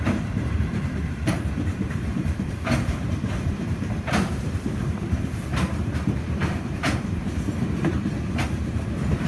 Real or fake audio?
fake